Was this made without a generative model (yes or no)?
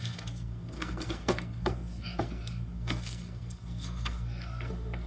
no